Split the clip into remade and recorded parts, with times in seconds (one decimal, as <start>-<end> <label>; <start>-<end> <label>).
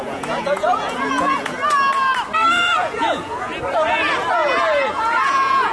0.0-1.6 remade; 1.6-2.5 recorded; 2.5-3.5 remade; 3.5-4.3 recorded; 4.3-5.7 remade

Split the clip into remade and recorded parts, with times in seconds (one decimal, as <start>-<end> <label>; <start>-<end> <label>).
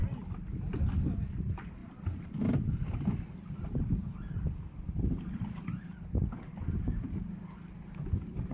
0.0-1.8 recorded; 1.8-3.2 remade; 3.2-4.0 recorded; 4.0-5.5 remade; 5.5-8.5 recorded